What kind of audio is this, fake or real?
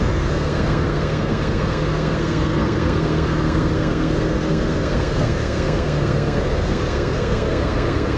fake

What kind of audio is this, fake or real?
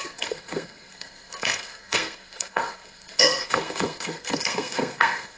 fake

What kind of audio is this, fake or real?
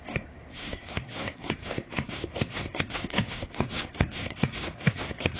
fake